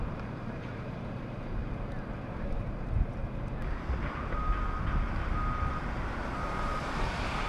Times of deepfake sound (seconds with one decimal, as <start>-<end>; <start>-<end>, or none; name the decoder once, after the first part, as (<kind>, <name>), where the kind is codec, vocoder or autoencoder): 0.0-1.6 (vocoder, BigVGAN v2); 2.1-3.2; 5.7-7.5